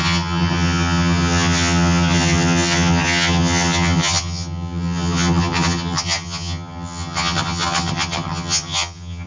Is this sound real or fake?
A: fake